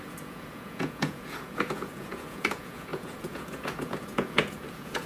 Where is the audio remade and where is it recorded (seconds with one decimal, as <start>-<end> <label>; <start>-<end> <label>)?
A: 0.0-5.1 remade